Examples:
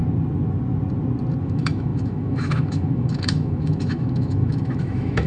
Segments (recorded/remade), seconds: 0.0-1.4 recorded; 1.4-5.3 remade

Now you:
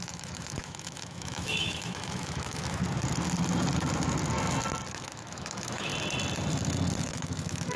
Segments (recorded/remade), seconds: 0.0-2.8 remade; 2.8-4.9 recorded; 4.9-5.9 remade; 5.9-7.0 recorded; 7.0-7.8 remade

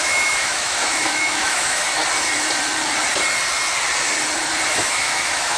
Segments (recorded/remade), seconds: 0.0-2.0 remade; 2.0-4.7 recorded; 4.7-5.6 remade

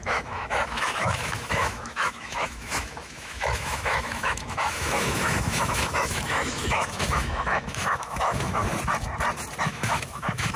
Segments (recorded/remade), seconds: 0.0-8.6 remade; 8.6-9.7 recorded; 9.7-10.6 remade

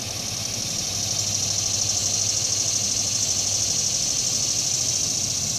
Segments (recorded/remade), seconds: 0.0-5.6 recorded

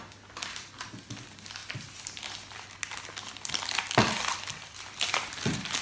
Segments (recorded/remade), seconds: 0.0-5.8 recorded

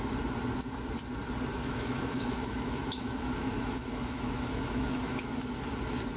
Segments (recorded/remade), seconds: 0.0-1.5 recorded; 1.5-5.2 remade; 5.2-6.2 recorded

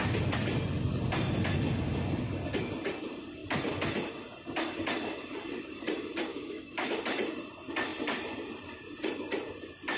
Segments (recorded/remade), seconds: 0.0-6.3 recorded; 6.3-7.0 remade; 7.0-10.0 recorded